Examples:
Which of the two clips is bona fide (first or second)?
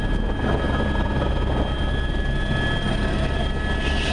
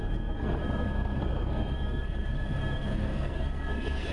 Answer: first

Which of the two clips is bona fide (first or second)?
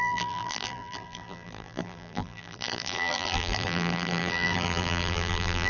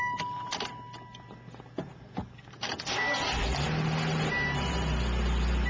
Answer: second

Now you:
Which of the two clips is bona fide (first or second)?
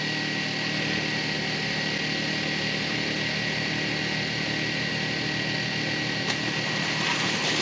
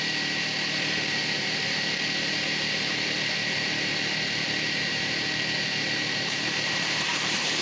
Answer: first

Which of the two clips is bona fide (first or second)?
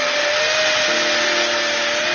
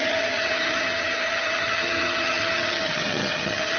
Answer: first